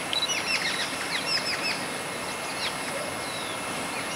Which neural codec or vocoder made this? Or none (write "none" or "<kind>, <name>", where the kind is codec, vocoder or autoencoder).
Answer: none